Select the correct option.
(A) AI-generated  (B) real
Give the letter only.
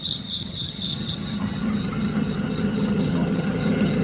A